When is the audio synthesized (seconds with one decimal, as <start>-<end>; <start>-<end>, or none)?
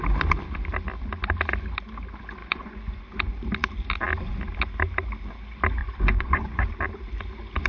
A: 2.4-3.0; 5.8-6.7